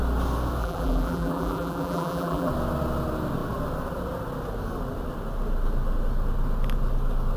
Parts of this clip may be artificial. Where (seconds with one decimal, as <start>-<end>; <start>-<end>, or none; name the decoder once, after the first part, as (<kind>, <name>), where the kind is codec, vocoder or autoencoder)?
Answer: 0.6-2.5 (vocoder, BigVGAN v2)

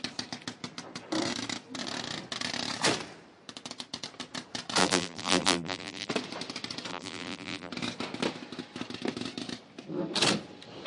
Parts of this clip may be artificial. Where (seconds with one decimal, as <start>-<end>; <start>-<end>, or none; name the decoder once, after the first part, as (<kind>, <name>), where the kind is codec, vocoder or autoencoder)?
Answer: 4.8-6.1 (vocoder, BigVGAN v2); 6.9-7.7

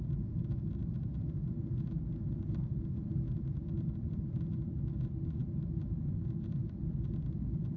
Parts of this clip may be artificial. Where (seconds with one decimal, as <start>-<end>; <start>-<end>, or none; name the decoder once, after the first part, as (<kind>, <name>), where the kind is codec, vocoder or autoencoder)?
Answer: none

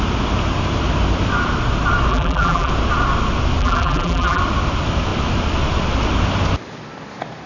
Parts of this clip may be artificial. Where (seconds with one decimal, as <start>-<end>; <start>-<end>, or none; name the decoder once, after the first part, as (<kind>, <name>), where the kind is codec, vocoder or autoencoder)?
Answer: 2.1-2.7 (vocoder, BigVGAN v2); 3.6-4.4

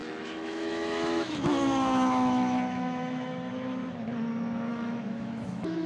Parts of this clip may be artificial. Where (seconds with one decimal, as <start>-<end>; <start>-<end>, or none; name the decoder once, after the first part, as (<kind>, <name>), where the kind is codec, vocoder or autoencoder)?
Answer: 0.0-3.5 (autoencoder, DAC-VAE); 4.7-5.9

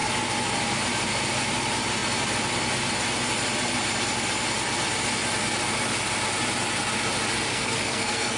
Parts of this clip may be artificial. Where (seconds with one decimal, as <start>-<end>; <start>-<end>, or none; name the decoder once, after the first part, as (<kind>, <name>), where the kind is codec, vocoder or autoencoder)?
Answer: 7.5-8.4 (codec, SNAC)

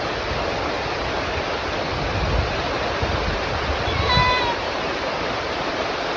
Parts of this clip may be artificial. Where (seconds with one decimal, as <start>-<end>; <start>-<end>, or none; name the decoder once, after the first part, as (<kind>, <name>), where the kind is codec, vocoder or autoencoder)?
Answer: none

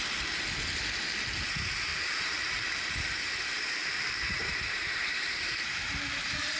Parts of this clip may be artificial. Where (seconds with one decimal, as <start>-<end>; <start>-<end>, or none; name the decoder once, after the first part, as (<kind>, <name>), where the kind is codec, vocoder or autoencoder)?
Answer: 1.9-3.2 (vocoder, BigVGAN v2); 3.8-6.6